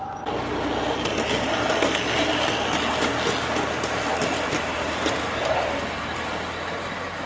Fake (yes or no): no